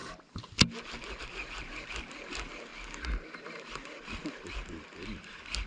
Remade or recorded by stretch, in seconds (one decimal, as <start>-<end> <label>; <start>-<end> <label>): 0.0-5.7 recorded